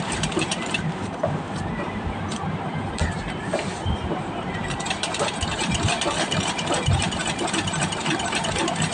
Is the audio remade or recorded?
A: remade